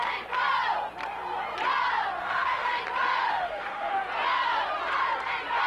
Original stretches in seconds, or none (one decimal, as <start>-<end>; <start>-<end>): 0.0-2.2; 2.8-3.2; 4.0-5.7